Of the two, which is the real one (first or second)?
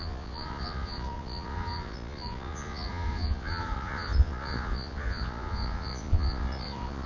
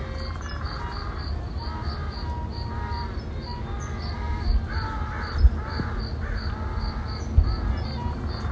second